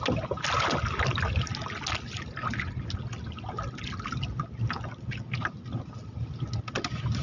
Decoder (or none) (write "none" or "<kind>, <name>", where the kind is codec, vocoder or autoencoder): none